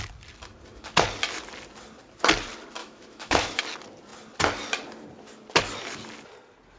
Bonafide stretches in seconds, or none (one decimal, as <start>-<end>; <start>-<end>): 0.0-2.8; 3.6-6.8